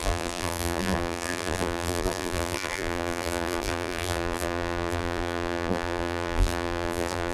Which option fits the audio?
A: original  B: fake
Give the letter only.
B